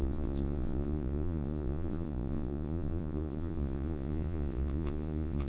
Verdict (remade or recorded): remade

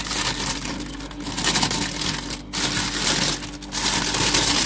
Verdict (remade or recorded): recorded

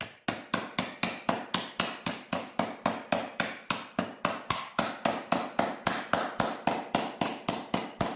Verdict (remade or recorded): recorded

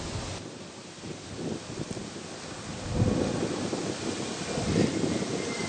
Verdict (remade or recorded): recorded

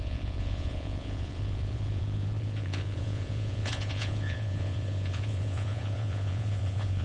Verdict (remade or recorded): remade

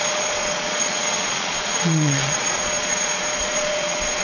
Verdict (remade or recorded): remade